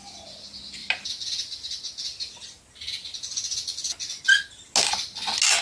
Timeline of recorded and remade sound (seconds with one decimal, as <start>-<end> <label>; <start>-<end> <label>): 0.0-5.6 recorded